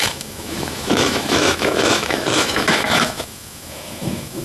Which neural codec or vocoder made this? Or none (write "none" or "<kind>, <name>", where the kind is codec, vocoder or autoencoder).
autoencoder, DAC-VAE